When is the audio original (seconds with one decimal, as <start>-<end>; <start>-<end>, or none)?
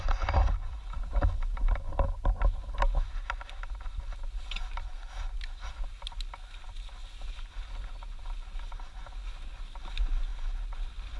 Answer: 0.0-11.2